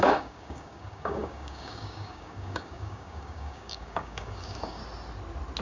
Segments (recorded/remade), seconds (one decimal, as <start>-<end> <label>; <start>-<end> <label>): 0.0-4.8 remade; 4.8-5.6 recorded